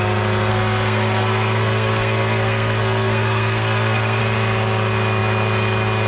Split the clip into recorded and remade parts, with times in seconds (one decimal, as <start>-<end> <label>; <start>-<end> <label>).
0.0-0.5 recorded; 0.5-4.2 remade; 4.2-6.1 recorded